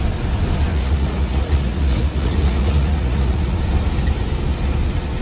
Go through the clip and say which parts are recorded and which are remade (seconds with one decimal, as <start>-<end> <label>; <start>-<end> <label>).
0.0-0.7 recorded; 0.7-3.6 remade; 3.6-5.2 recorded